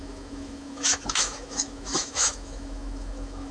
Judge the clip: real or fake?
fake